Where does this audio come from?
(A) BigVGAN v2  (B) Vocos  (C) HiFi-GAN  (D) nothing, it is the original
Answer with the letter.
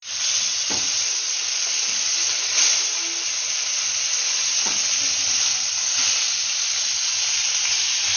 D